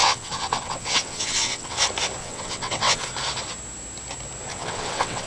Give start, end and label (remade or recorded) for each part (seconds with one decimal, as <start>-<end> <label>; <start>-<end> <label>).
0.0-1.8 remade; 1.8-2.2 recorded; 2.2-3.1 remade; 3.1-4.5 recorded; 4.5-5.3 remade